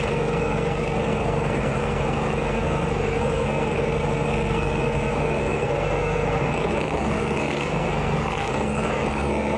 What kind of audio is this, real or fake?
fake